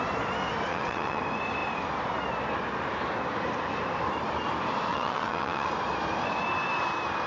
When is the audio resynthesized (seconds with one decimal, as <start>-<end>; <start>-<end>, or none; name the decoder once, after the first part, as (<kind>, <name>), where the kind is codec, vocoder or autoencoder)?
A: 0.7-1.2 (vocoder, WaveNeXt); 4.9-5.7